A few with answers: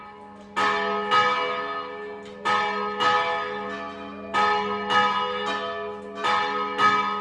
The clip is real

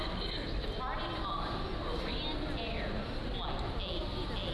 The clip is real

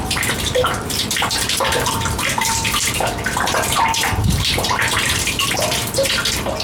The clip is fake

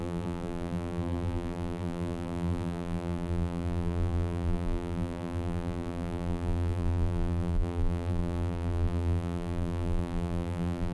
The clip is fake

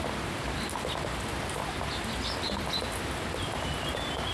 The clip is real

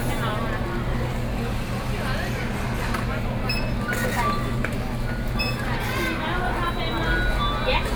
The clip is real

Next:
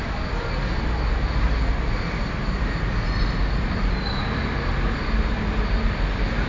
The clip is real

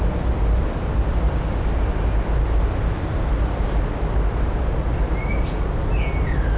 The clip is real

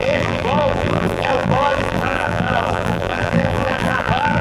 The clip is fake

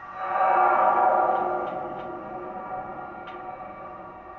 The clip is real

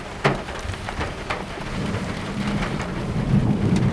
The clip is fake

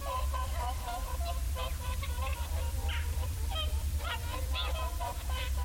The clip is fake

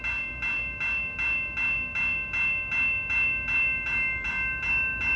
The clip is real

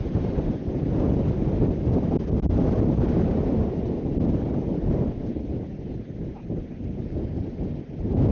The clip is real